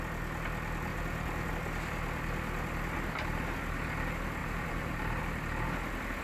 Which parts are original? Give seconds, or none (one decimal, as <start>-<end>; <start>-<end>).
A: 0.0-0.9; 1.5-4.4; 5.2-6.2